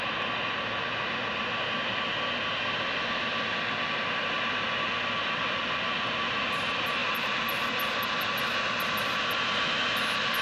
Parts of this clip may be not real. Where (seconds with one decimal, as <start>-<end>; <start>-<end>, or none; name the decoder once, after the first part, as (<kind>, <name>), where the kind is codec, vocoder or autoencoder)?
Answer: none